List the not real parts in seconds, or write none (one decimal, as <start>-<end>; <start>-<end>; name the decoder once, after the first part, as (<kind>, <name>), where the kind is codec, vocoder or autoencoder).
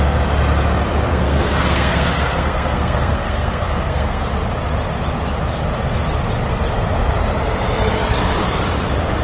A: 1.1-4.3 (codec, SNAC)